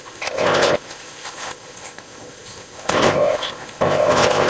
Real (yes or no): no